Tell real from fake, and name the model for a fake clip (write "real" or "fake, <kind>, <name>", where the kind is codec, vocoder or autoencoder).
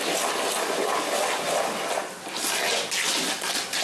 real